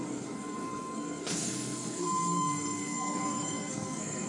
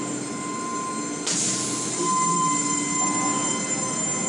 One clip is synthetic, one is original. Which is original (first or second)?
second